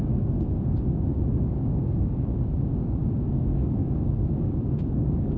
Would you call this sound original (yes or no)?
no